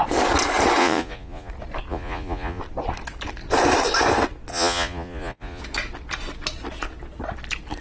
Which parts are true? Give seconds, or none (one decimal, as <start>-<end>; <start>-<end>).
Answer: 0.0-0.8; 1.5-1.9; 2.6-4.5; 5.6-7.8